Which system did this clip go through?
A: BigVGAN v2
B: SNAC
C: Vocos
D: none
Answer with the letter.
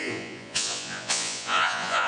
C